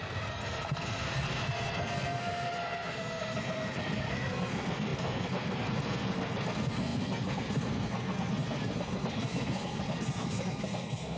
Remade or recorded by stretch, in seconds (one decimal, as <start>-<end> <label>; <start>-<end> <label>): 0.0-11.2 remade